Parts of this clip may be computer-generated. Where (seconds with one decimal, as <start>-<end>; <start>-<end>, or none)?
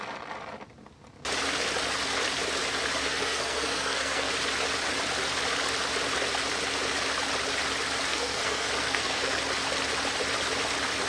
3.0-4.3; 8.1-9.4